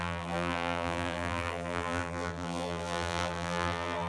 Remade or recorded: remade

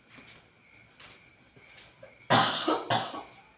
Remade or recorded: recorded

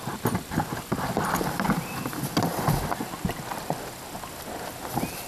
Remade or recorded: recorded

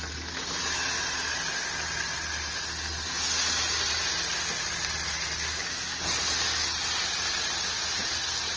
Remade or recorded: recorded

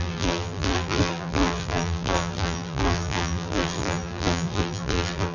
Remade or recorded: remade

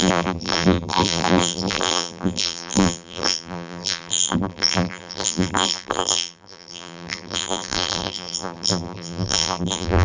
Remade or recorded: remade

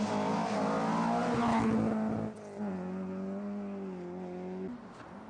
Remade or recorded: recorded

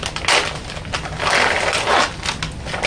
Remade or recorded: recorded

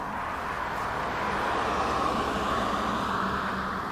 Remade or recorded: recorded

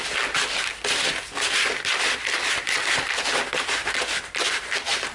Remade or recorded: recorded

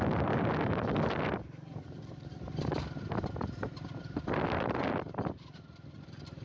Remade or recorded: remade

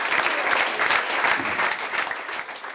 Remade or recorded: remade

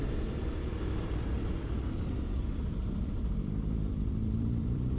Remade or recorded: remade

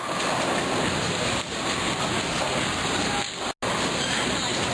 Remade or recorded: recorded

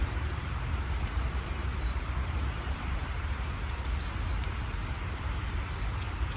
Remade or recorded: remade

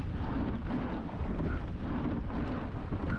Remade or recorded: recorded